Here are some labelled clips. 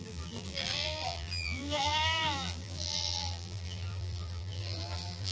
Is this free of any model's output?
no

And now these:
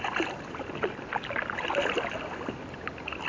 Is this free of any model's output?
yes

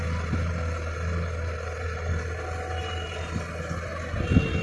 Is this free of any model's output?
yes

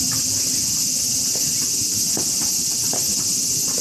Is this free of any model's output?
yes